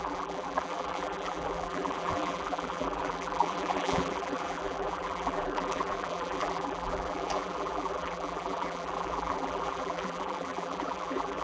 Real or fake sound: fake